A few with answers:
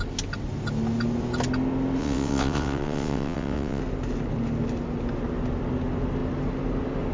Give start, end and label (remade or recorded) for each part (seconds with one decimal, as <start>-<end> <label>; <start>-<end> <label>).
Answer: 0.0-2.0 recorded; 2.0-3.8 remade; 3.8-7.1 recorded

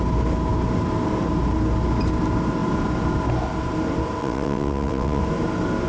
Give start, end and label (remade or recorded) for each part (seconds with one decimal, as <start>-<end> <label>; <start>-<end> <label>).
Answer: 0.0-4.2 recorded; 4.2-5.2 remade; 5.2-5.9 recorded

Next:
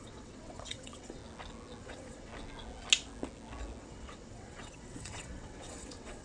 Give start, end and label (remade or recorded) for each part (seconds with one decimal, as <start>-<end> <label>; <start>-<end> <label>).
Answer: 0.0-1.2 remade; 1.2-1.8 recorded; 1.8-2.3 remade; 2.3-3.8 recorded; 3.8-6.2 remade

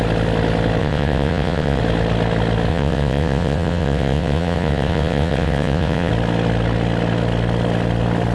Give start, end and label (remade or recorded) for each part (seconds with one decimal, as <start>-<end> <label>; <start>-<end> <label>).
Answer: 0.0-0.8 recorded; 0.8-1.8 remade; 1.8-2.7 recorded; 2.7-6.1 remade; 6.1-8.3 recorded

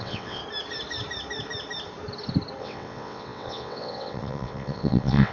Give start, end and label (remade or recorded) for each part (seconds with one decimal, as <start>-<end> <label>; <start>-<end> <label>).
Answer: 0.0-0.4 remade; 0.4-2.6 recorded; 2.6-5.3 remade